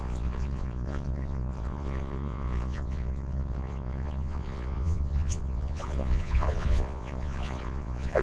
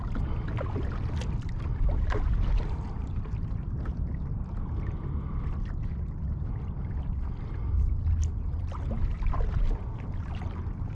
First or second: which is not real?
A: first